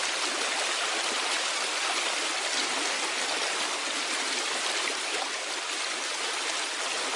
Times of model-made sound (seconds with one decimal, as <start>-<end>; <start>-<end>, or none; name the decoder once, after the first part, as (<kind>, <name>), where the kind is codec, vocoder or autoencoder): none